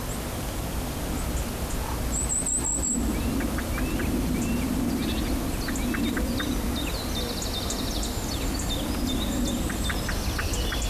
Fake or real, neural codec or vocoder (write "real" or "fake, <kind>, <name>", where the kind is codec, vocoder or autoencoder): real